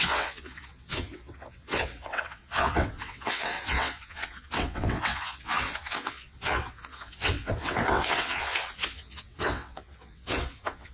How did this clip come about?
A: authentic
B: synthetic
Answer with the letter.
B